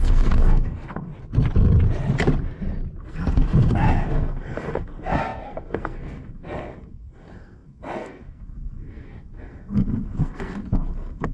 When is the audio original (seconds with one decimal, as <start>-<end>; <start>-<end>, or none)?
1.1-3.0